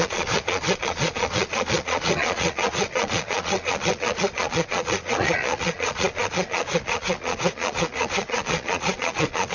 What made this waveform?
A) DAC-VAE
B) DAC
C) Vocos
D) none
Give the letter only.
C